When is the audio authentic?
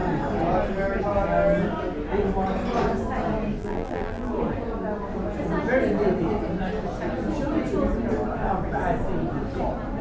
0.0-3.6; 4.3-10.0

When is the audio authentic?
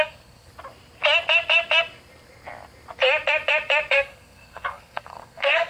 0.5-3.9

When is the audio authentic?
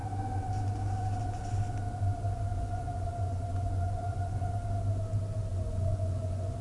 0.0-2.5; 4.5-5.5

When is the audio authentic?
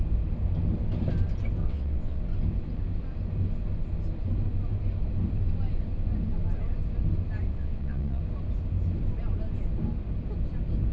0.0-1.6; 2.2-7.5; 8.2-10.9